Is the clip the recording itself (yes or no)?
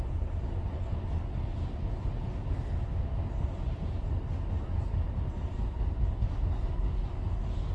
yes